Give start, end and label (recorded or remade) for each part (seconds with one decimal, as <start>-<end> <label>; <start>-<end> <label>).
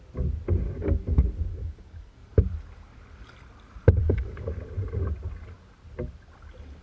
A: 0.0-1.5 recorded; 1.5-2.3 remade; 2.3-4.0 recorded; 4.0-4.6 remade; 4.6-6.8 recorded